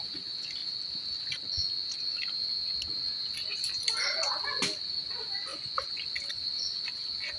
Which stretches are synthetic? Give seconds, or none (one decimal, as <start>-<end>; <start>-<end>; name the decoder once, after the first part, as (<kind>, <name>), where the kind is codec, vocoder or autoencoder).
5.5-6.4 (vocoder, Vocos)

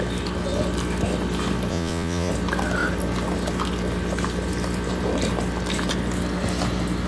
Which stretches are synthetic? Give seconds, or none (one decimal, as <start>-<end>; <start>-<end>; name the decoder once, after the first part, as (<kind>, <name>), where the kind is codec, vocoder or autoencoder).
1.7-2.3 (vocoder, Vocos)

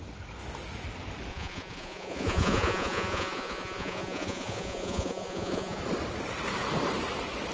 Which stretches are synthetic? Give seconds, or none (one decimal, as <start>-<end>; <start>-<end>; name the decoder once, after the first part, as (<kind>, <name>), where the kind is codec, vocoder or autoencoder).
1.3-5.8 (vocoder, Vocos)

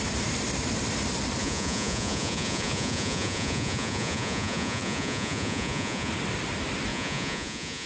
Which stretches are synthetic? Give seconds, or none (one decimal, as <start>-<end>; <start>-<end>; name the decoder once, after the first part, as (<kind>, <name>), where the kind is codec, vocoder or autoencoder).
1.4-6.1 (vocoder, Vocos); 6.9-7.9

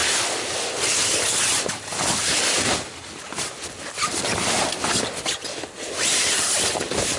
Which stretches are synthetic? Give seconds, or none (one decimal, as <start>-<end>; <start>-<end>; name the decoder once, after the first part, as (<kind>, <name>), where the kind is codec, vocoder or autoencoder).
none

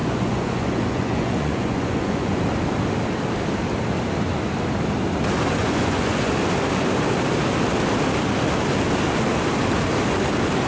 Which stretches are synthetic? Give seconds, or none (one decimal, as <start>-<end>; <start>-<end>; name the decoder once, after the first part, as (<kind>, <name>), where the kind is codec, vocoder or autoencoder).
0.0-2.4 (vocoder, Vocos); 5.6-6.3